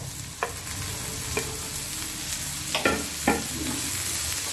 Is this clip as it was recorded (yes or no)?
yes